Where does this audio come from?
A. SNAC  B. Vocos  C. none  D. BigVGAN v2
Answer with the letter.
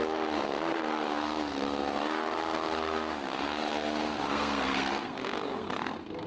A